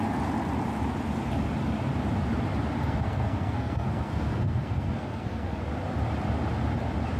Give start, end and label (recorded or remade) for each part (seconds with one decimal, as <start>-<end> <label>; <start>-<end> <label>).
0.0-2.8 recorded; 2.8-5.6 remade; 5.6-7.2 recorded